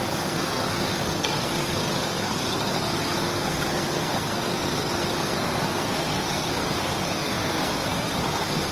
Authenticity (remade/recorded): remade